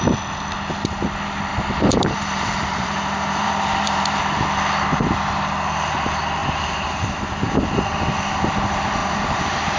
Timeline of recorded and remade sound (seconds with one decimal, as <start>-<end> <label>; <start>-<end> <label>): 0.0-1.5 recorded; 1.5-4.2 remade; 4.2-6.4 recorded; 6.4-7.8 remade; 7.8-9.0 recorded; 9.0-9.8 remade